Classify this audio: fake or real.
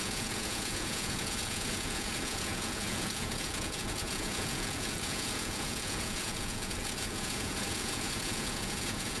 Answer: fake